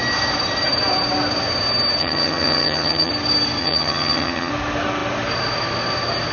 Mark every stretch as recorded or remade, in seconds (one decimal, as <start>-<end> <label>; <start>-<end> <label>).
0.0-2.0 recorded; 2.0-3.1 remade; 3.1-3.6 recorded; 3.6-4.5 remade; 4.5-6.3 recorded